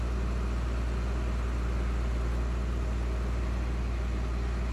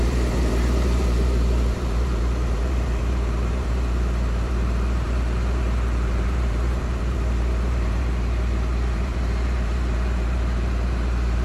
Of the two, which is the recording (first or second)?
first